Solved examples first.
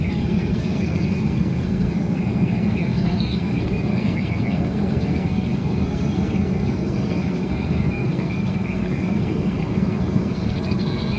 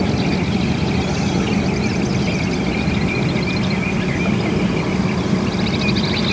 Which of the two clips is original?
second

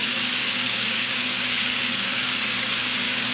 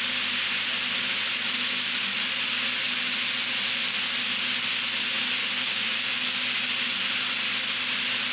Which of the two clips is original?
second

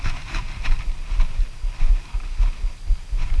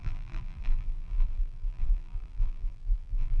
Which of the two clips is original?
first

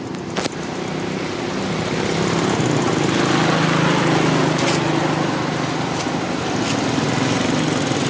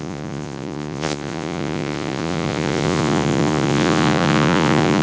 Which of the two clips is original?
first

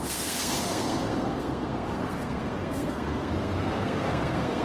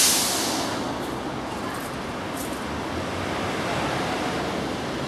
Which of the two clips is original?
second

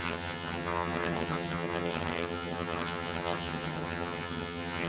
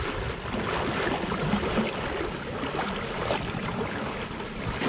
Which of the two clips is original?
second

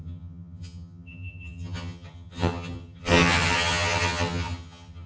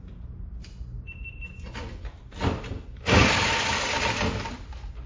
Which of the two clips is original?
second